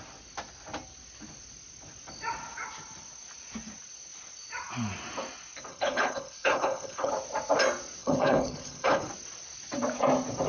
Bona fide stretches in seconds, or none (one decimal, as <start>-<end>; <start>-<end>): 0.0-5.7; 7.1-8.0; 9.1-10.5